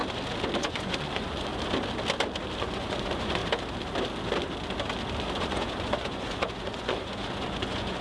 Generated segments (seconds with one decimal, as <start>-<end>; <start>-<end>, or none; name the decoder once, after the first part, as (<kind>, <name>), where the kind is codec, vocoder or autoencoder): 0.6-1.5 (vocoder, Vocos); 2.6-3.4; 5.4-8.0